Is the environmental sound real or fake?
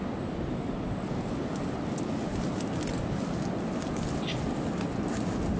real